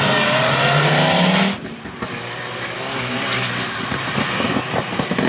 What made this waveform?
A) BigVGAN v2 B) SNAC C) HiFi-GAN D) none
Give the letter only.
D